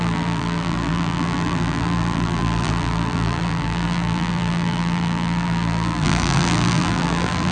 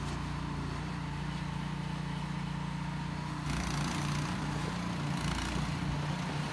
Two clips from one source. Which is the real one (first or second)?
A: second